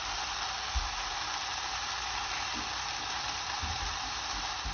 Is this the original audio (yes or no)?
yes